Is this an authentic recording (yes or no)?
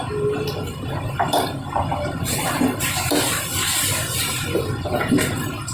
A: yes